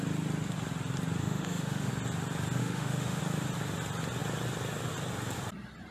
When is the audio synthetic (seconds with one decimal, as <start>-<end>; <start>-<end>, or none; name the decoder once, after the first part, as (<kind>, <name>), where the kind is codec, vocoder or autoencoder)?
1.2-1.9 (autoencoder, DAC-VAE); 2.6-3.2